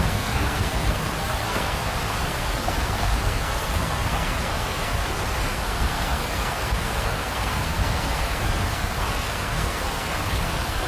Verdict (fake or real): fake